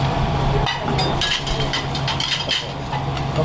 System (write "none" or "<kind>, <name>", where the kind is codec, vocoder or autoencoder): none